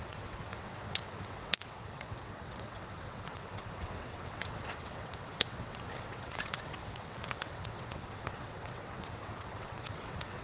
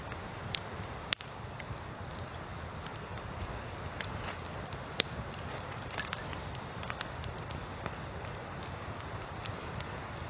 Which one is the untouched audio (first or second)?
second